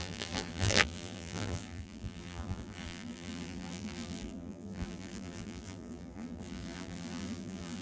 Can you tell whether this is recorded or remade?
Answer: remade